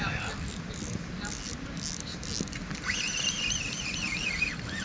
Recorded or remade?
recorded